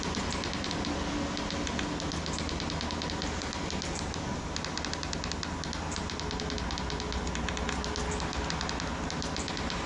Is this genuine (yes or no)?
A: yes